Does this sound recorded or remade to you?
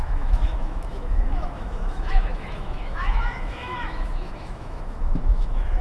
remade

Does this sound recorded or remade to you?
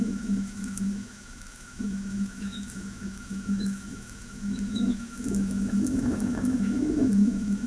remade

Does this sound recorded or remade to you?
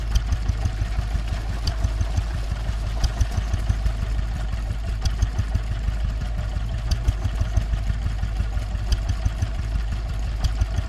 recorded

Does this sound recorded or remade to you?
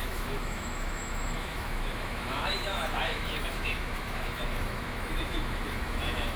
remade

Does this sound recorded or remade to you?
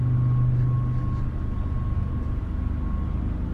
recorded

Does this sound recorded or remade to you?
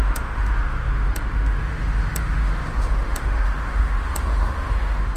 remade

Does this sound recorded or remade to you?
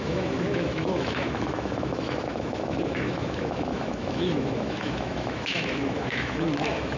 remade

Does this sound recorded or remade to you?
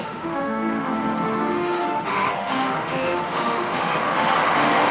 remade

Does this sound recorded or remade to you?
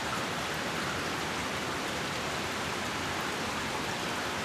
recorded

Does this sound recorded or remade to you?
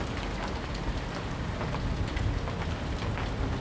recorded